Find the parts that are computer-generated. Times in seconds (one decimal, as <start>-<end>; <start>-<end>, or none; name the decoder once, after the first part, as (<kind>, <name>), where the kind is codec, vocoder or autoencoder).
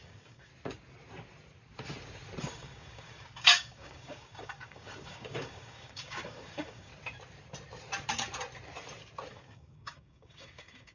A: 0.0-0.5 (codec, DAC); 2.4-6.9; 9.3-10.9